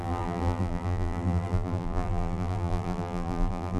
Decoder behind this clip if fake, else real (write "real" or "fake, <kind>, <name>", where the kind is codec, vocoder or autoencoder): fake, vocoder, BigVGAN v2